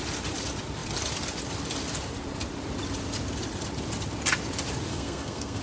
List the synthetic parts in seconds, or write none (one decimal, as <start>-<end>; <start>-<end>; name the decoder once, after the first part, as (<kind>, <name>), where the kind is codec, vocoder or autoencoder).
4.9-5.6 (codec, SNAC)